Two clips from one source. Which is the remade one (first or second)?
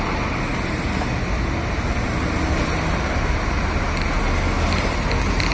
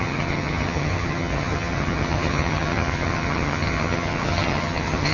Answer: second